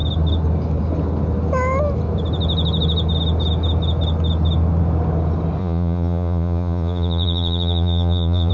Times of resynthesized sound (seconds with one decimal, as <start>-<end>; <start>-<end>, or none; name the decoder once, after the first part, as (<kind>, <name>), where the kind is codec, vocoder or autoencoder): 5.6-8.5 (vocoder, Vocos)